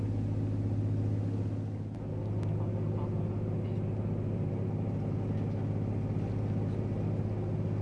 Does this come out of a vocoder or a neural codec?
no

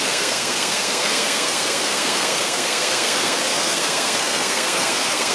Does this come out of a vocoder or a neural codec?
yes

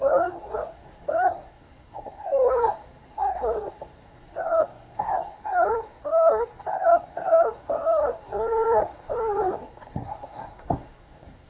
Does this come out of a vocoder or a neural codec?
yes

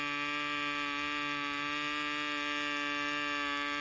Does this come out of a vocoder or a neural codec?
no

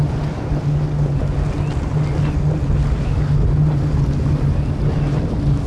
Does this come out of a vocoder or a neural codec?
no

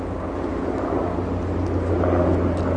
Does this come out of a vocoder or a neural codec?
no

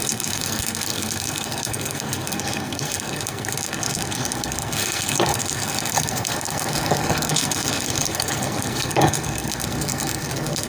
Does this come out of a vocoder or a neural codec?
yes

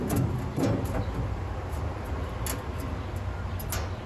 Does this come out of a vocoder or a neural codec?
no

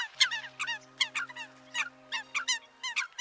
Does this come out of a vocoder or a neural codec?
no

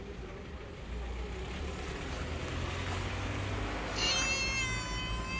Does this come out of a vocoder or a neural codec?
no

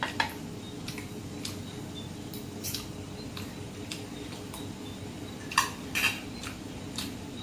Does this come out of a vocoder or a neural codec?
no